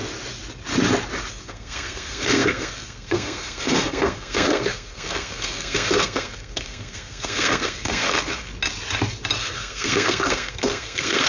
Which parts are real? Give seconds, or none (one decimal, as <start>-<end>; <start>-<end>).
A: 0.0-1.3; 8.5-9.4